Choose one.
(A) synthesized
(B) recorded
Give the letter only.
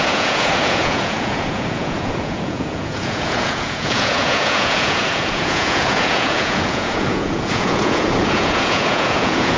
A